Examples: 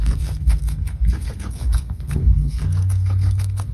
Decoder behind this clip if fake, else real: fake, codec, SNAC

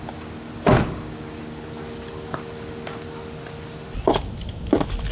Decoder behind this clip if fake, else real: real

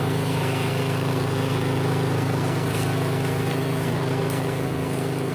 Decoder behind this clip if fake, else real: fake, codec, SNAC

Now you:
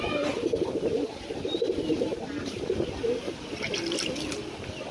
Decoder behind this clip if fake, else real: real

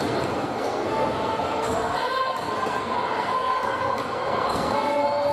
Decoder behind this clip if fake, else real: fake, codec, SNAC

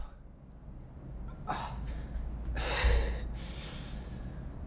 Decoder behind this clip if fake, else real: real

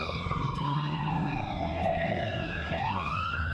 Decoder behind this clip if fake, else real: fake, codec, SNAC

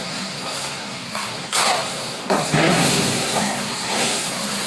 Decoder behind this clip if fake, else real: fake, codec, SNAC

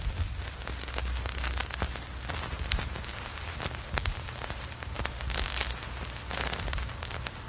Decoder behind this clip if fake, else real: real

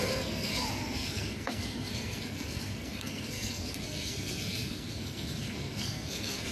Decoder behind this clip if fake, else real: fake, codec, SNAC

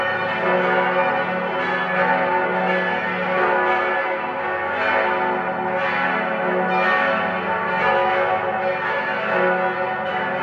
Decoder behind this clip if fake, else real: real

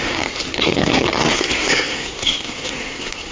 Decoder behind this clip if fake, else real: fake, codec, SNAC